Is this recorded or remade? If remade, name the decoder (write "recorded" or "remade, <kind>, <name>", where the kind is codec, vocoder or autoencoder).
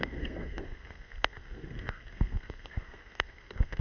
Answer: remade, codec, SNAC